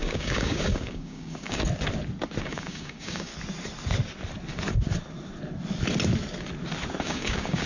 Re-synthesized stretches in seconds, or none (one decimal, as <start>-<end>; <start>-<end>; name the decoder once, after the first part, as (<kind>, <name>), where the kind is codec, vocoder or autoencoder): 0.0-1.6 (codec, DAC); 2.4-3.3; 7.0-7.7